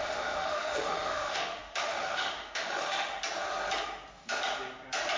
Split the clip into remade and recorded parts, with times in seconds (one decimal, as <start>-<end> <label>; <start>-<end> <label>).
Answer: 0.0-3.1 remade; 3.1-5.2 recorded